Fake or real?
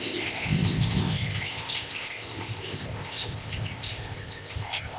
fake